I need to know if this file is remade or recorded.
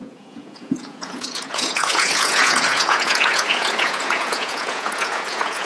remade